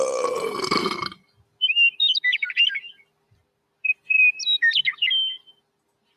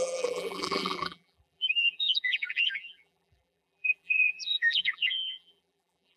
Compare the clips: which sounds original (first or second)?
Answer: first